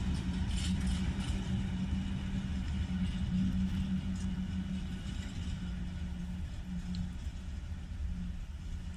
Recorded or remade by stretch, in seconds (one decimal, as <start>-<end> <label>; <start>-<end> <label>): 0.0-9.0 recorded